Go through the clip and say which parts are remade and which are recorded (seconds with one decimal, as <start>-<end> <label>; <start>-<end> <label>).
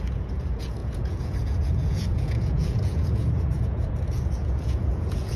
0.0-5.4 remade